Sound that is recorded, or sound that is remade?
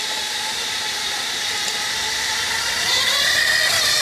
remade